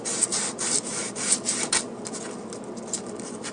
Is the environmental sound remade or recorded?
remade